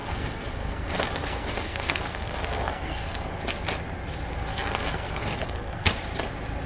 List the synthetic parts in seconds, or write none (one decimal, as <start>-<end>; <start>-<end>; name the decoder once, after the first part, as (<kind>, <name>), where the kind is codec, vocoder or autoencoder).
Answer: 0.0-3.3 (codec, SNAC); 4.5-5.9